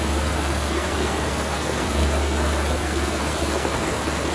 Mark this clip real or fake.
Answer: fake